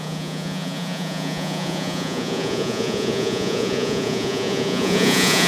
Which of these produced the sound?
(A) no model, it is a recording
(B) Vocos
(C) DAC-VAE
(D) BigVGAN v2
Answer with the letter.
B